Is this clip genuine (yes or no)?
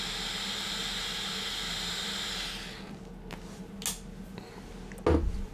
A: yes